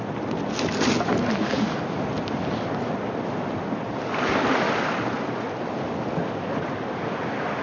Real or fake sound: real